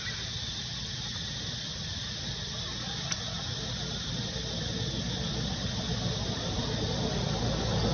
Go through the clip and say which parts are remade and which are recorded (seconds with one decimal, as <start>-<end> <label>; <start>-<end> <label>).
0.0-7.9 recorded

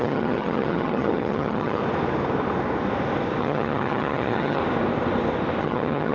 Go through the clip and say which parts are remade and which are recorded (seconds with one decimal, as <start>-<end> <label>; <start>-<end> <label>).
0.0-1.8 remade; 1.8-3.4 recorded; 3.4-4.6 remade; 4.6-5.6 recorded; 5.6-6.1 remade

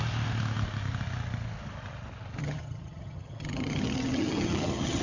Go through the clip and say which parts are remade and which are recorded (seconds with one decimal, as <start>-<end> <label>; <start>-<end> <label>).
0.0-2.4 recorded; 2.4-5.0 remade

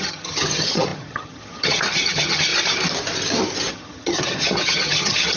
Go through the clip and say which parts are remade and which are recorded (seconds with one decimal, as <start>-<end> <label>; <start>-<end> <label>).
0.0-2.5 remade; 2.5-3.7 recorded; 3.7-5.4 remade

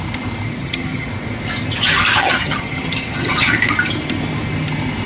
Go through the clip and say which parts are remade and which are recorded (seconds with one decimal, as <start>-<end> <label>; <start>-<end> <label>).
0.0-0.6 recorded; 0.6-1.1 remade; 1.1-2.2 recorded; 2.2-3.6 remade; 3.6-5.1 recorded

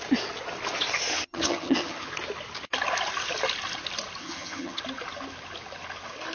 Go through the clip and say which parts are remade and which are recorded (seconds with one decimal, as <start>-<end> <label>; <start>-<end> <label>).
0.0-1.1 recorded; 1.1-2.1 remade; 2.1-4.2 recorded; 4.2-4.8 remade; 4.8-6.3 recorded

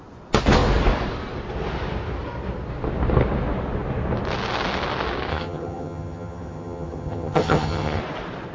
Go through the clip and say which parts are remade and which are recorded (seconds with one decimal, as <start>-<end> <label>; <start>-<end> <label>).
0.0-5.3 recorded; 5.3-8.0 remade; 8.0-8.5 recorded

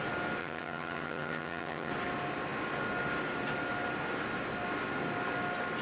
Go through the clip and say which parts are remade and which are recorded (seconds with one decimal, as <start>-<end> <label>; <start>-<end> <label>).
0.0-0.4 recorded; 0.4-1.9 remade; 1.9-5.8 recorded